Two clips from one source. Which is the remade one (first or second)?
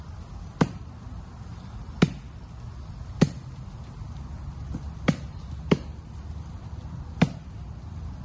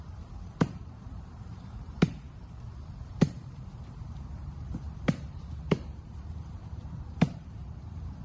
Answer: second